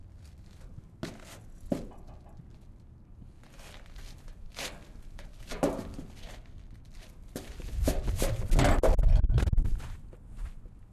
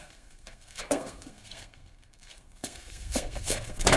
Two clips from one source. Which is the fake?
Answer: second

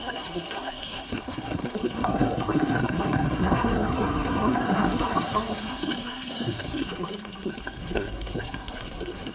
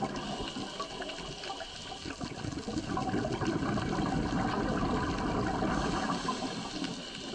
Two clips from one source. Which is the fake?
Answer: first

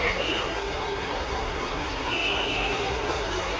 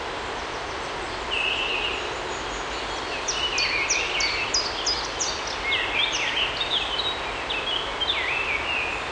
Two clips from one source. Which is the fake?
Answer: first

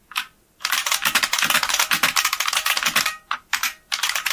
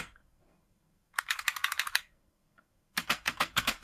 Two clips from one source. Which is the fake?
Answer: second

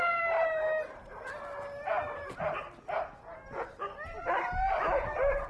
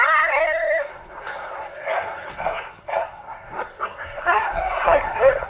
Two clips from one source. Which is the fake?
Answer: second